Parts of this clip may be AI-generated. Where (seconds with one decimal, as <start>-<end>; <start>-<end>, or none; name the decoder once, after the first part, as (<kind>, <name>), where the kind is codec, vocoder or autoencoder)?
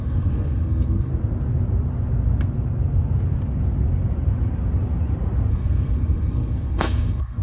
0.0-1.1 (codec, SNAC); 5.5-7.4